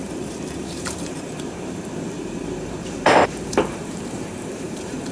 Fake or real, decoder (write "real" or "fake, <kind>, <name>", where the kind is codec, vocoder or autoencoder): fake, vocoder, BigVGAN v2